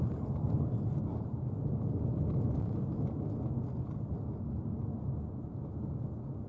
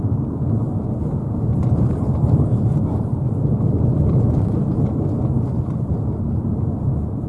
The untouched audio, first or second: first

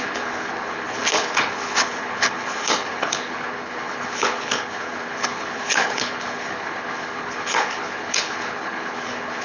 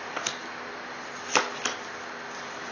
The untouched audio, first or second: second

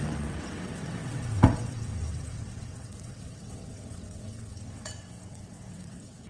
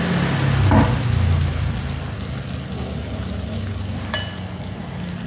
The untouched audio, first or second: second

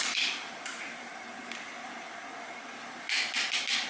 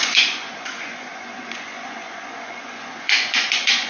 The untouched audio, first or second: first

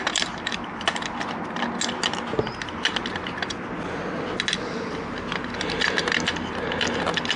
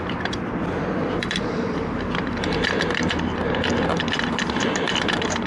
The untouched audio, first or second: first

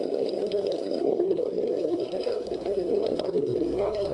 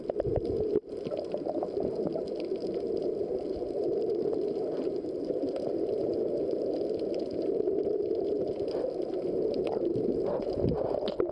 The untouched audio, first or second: second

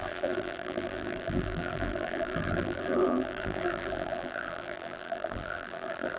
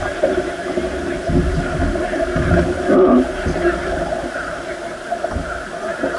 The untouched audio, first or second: second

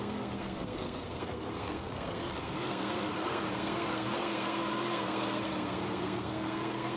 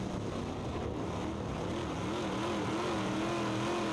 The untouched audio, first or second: second